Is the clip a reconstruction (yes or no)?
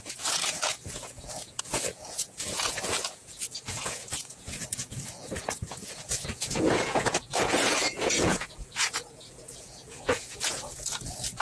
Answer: yes